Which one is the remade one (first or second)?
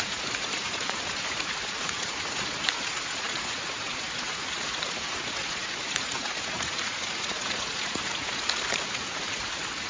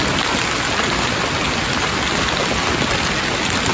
first